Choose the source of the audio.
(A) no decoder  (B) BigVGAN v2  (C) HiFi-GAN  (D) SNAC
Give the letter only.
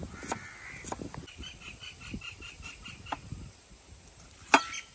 A